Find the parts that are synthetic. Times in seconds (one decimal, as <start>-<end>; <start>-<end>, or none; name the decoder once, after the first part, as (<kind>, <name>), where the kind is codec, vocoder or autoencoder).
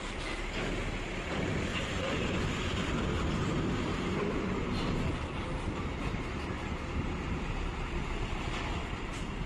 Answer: 1.7-2.8 (vocoder, Vocos)